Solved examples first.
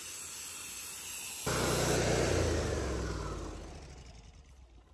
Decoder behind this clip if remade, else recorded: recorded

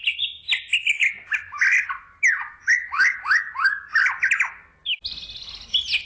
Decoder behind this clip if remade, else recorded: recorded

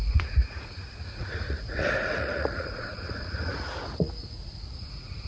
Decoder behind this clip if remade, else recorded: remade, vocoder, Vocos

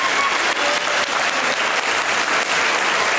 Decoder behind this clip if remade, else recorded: recorded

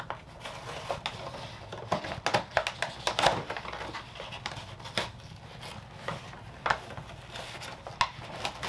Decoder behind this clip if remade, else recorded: recorded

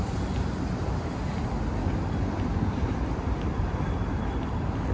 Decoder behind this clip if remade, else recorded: recorded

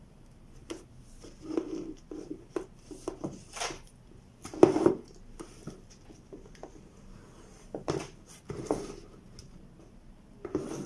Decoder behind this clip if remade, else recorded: recorded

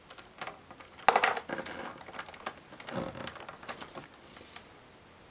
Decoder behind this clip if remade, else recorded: recorded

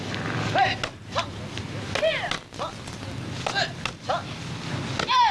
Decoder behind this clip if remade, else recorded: recorded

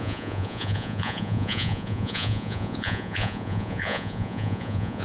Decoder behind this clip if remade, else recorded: remade, vocoder, Vocos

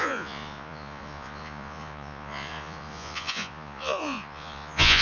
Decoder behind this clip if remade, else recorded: remade, vocoder, Vocos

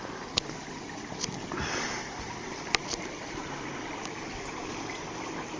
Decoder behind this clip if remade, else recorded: recorded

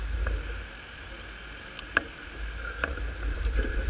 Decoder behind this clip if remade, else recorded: recorded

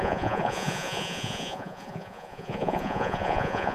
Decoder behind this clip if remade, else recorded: remade, vocoder, Vocos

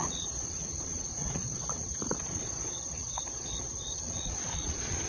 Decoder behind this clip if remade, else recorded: remade, vocoder, Vocos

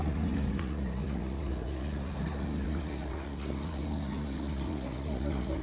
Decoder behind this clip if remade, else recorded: remade, vocoder, Vocos